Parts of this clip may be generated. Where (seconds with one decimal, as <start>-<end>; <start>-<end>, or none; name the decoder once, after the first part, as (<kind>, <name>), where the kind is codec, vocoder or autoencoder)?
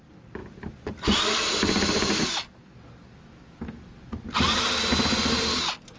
none